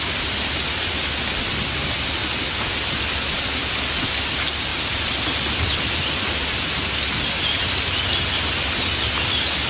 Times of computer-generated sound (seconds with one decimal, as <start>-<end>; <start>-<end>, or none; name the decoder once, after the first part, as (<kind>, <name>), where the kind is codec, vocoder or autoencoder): none